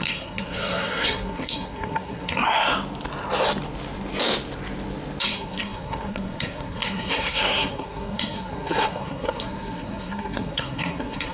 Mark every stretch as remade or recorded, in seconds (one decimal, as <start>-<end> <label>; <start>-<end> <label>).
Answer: 0.0-2.4 remade; 2.4-5.2 recorded; 5.2-11.3 remade